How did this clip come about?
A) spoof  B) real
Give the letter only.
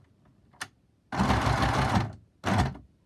B